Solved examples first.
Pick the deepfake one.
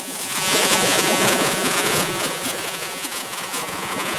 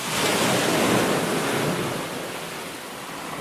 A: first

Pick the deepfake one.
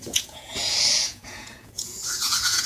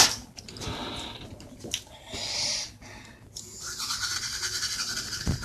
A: first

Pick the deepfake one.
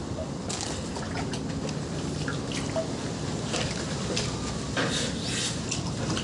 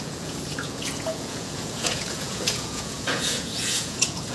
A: second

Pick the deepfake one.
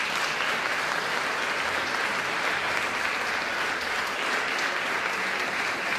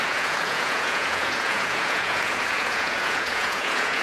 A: second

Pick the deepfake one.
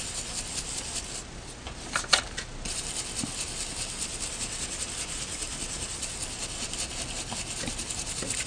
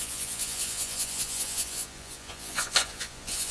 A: second